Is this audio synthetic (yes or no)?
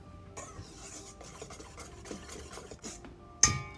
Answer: no